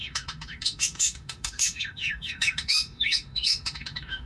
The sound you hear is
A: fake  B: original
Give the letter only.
A